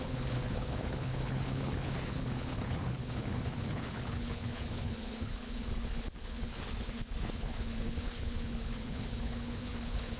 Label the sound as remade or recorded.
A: remade